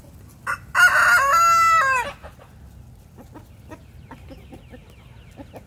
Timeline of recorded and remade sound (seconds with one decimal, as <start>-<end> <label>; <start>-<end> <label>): 0.0-5.7 recorded